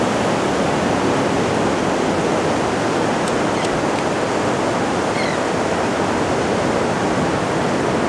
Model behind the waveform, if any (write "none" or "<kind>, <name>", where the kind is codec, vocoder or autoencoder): none